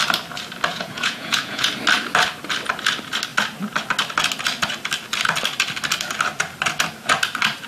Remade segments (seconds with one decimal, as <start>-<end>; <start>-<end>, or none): 0.7-1.7